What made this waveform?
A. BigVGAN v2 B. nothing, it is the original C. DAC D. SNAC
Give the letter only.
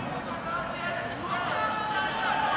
B